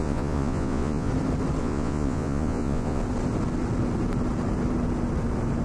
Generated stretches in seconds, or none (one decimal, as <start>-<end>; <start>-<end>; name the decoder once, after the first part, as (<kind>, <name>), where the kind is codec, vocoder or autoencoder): 0.0-1.1 (vocoder, Vocos); 1.6-3.0

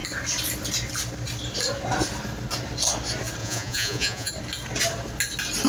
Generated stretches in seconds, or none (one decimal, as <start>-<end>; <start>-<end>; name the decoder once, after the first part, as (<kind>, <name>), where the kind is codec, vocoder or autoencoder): 3.4-4.3 (vocoder, Vocos)

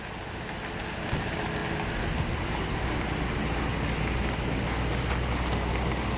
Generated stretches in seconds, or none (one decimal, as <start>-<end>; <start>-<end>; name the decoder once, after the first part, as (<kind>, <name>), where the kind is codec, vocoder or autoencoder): none

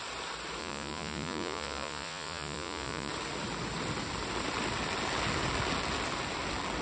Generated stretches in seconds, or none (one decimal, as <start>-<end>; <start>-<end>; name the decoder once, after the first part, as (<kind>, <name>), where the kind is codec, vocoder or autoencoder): 0.6-3.1 (vocoder, Vocos)

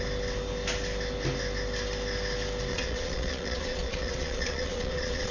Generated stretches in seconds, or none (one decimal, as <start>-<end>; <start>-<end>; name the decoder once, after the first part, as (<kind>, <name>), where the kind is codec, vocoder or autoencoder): 2.7-5.3 (vocoder, Vocos)

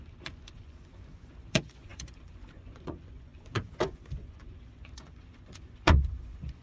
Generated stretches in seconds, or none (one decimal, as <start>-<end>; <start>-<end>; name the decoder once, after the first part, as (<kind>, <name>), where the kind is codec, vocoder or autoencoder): 0.0-6.6 (vocoder, Vocos)

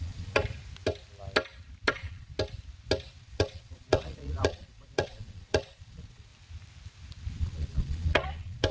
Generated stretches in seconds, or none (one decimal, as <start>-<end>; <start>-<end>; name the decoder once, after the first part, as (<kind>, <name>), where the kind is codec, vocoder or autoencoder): 0.0-0.4 (vocoder, Vocos); 1.9-2.3; 3.2-6.3; 7.4-8.7